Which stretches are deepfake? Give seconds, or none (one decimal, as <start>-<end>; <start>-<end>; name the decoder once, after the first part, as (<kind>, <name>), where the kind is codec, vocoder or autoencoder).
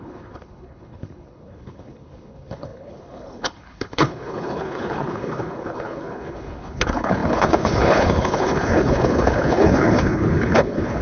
0.0-11.0 (codec, HILCodec)